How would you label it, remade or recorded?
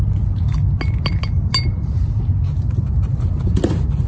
recorded